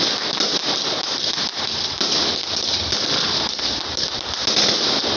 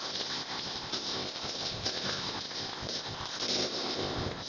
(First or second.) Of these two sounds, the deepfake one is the second